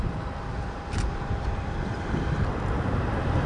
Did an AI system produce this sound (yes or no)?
yes